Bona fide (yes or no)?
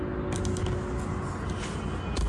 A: yes